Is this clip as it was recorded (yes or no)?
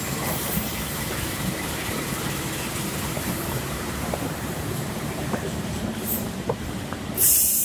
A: no